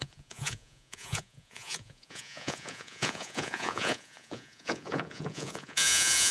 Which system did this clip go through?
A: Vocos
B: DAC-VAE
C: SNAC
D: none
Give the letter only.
A